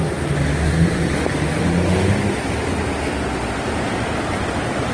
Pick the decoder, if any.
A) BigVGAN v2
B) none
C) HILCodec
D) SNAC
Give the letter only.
B